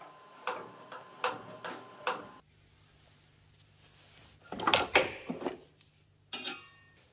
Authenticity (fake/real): real